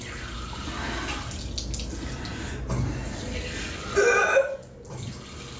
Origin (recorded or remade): recorded